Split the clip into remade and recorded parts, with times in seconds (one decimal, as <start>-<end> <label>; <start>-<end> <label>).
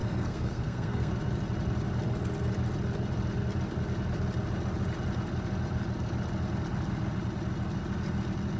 0.0-1.1 remade; 1.1-8.6 recorded